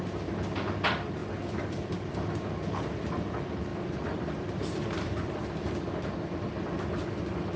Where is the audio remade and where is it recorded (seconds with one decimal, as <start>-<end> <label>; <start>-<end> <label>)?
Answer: 0.0-3.7 recorded; 3.7-7.1 remade; 7.1-7.6 recorded